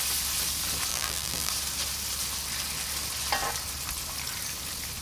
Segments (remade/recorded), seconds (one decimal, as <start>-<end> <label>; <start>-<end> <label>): 0.0-0.9 recorded; 0.9-1.5 remade; 1.5-5.0 recorded